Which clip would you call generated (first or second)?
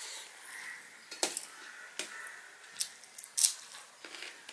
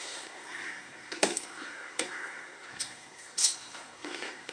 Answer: second